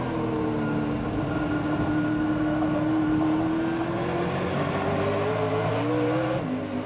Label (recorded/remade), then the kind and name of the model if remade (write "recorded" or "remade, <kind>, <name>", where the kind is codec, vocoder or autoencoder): recorded